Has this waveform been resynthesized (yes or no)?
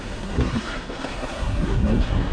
yes